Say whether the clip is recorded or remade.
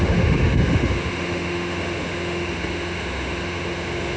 remade